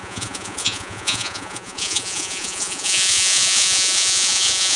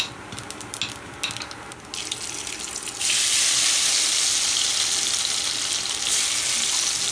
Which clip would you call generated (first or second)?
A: first